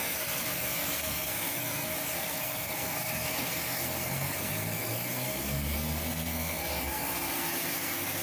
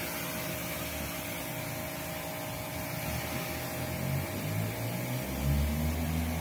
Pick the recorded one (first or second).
second